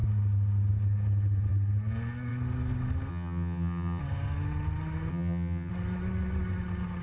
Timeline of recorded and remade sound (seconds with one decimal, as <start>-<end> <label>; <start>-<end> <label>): 0.0-3.1 recorded; 3.1-4.0 remade; 4.0-5.1 recorded; 5.1-5.7 remade; 5.7-7.0 recorded